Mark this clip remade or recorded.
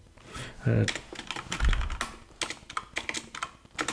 recorded